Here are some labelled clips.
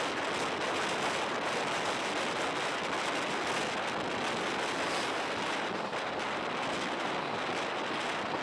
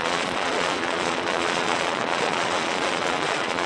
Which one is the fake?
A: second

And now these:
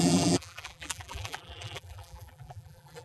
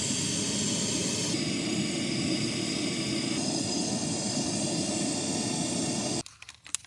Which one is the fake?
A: first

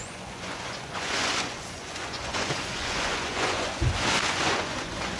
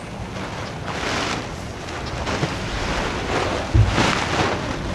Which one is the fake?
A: first